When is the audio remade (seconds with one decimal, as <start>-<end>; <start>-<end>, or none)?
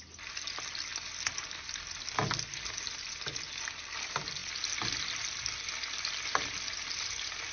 none